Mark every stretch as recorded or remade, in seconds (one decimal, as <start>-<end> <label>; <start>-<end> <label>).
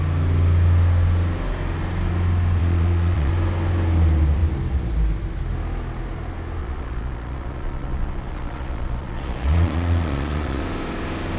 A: 0.0-2.6 recorded; 2.6-3.3 remade; 3.3-6.6 recorded; 6.6-10.6 remade; 10.6-11.4 recorded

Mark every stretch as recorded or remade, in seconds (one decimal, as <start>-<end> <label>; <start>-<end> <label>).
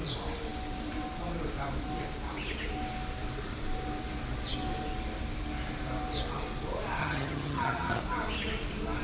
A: 0.0-7.0 recorded; 7.0-8.0 remade; 8.0-9.0 recorded